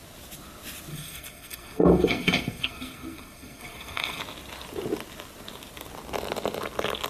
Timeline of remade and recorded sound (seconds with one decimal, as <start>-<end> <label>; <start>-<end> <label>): 0.0-0.9 recorded; 0.9-4.2 remade; 4.2-7.1 recorded